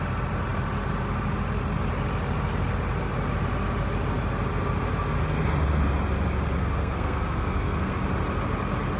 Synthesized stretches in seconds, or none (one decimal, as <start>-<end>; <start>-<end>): 6.6-7.9

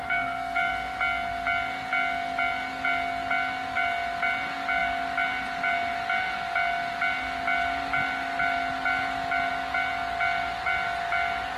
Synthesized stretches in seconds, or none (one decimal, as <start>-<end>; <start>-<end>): 0.0-0.7

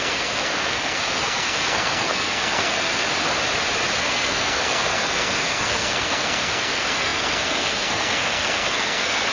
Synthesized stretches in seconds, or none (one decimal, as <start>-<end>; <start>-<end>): 0.0-3.1; 4.0-9.3